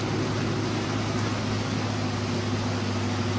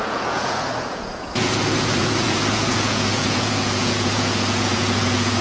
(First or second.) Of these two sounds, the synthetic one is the second